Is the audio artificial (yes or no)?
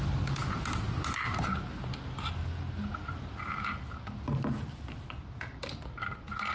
no